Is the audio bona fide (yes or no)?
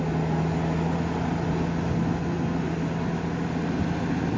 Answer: yes